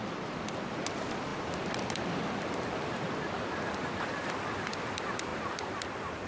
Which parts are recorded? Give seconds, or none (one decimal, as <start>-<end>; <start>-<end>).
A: none